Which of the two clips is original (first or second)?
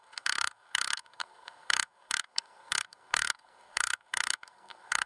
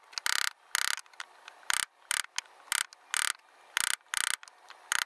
second